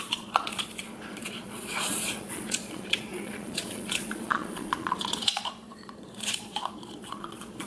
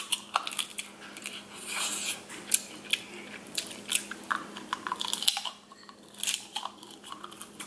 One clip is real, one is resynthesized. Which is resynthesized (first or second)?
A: first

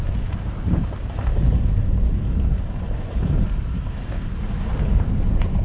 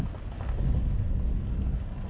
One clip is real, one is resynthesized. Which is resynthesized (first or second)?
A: first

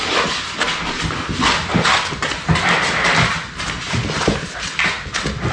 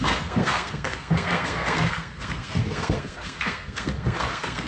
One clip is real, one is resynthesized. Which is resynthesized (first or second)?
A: second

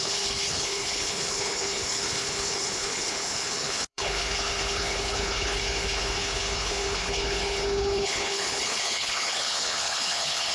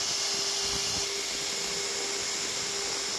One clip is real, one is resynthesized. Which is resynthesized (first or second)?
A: first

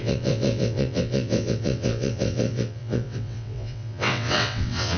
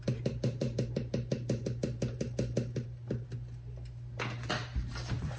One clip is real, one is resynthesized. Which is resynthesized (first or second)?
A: first